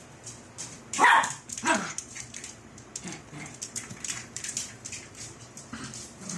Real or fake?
fake